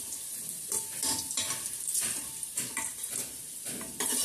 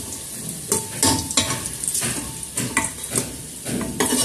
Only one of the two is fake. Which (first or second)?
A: first